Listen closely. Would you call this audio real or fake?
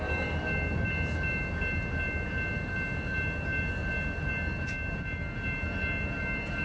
real